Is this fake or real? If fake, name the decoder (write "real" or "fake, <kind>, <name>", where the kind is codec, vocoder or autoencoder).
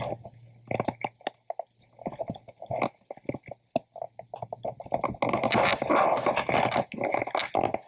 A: real